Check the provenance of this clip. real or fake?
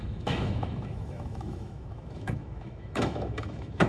fake